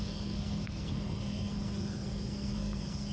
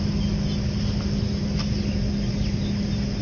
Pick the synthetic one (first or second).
first